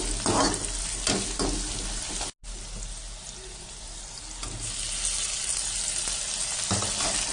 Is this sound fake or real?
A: real